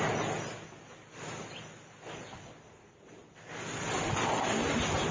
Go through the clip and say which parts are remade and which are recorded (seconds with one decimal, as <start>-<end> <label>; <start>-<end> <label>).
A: 0.0-5.1 recorded